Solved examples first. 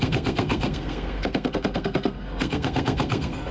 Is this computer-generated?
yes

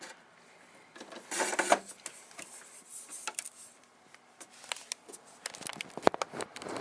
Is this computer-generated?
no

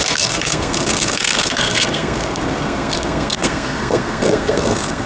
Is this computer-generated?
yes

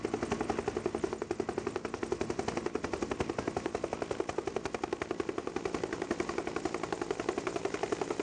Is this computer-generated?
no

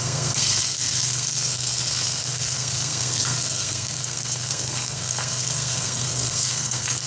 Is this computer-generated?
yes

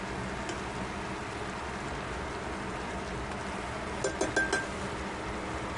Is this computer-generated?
no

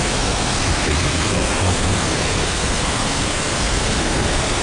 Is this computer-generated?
yes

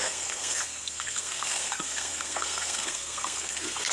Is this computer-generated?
yes